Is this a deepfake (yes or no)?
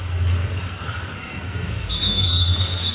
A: yes